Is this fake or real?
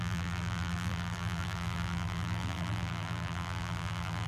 fake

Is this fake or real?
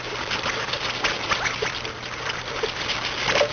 fake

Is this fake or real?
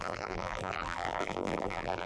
fake